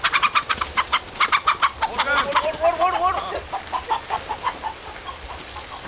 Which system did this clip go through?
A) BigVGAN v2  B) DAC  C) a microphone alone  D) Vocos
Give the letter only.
A